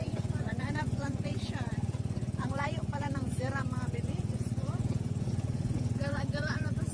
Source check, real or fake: fake